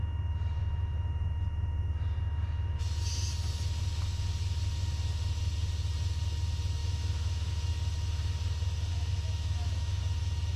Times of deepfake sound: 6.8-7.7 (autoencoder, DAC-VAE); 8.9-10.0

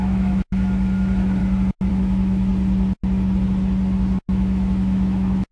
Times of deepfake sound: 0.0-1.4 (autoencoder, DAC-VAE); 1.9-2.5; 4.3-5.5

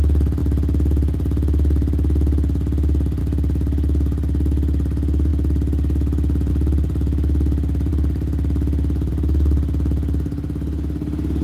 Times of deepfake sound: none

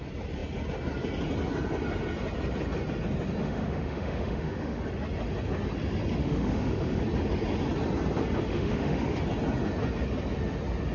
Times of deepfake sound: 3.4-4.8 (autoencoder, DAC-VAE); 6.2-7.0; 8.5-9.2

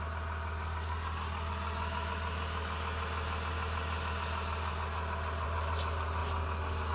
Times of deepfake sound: none